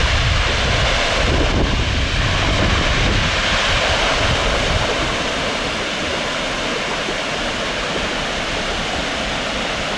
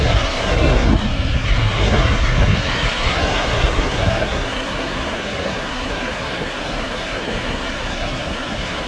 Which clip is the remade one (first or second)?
second